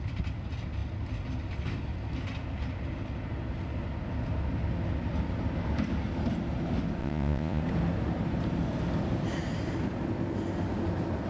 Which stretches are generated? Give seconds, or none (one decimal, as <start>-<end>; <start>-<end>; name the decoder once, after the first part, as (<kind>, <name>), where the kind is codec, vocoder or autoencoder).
7.0-7.6 (vocoder, Vocos)